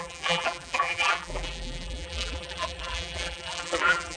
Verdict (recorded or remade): remade